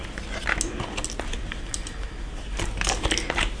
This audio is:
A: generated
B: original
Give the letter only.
B